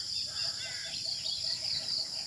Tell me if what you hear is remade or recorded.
remade